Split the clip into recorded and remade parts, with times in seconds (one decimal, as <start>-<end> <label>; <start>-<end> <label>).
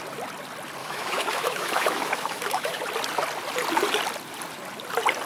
0.0-0.8 recorded; 0.8-2.8 remade; 2.8-5.3 recorded